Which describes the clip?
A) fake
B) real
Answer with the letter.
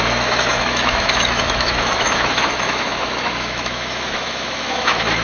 A